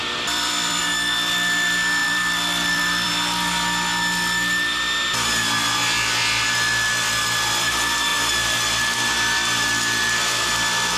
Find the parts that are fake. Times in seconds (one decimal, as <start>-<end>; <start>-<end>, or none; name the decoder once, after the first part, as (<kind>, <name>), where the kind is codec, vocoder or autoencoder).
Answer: 0.0-0.8 (vocoder, BigVGAN v2); 2.0-3.1